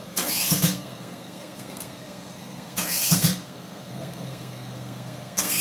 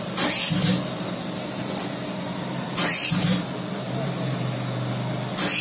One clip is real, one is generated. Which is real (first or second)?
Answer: second